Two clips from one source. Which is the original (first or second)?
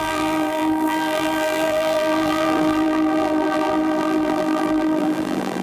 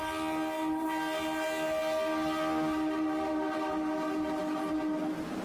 second